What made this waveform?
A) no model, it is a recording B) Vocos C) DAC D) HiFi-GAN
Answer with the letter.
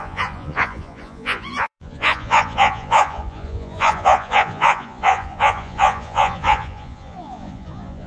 B